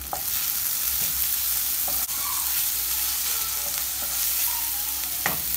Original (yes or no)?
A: yes